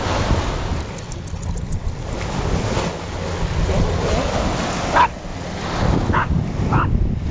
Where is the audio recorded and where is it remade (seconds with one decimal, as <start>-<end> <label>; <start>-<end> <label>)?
0.0-7.3 recorded